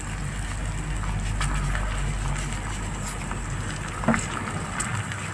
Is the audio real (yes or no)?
yes